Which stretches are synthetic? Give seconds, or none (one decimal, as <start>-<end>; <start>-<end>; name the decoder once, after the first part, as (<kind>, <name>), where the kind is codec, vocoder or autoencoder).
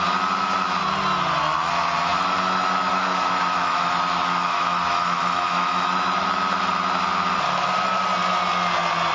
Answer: 2.1-6.2 (autoencoder, DAC-VAE)